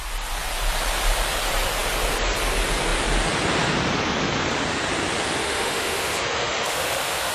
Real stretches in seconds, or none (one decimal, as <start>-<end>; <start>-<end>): 0.0-5.4